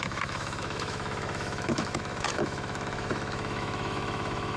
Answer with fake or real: fake